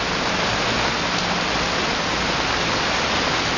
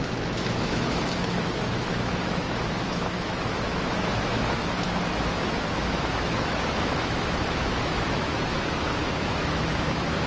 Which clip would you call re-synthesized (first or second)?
second